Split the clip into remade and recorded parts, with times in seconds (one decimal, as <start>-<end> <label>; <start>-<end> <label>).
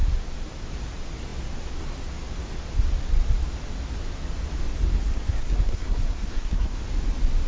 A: 0.0-5.0 recorded; 5.0-6.8 remade; 6.8-7.5 recorded